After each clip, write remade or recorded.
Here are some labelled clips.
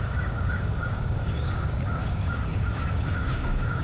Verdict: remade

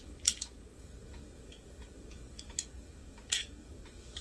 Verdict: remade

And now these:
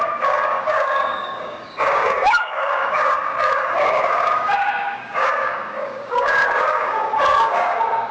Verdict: remade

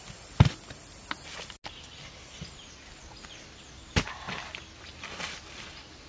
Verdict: recorded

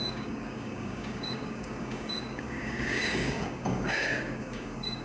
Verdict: remade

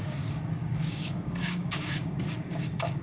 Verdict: remade